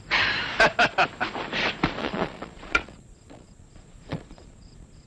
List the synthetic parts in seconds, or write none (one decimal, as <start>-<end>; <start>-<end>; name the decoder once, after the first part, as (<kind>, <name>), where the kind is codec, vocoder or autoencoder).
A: 2.0-5.1 (vocoder, Vocos)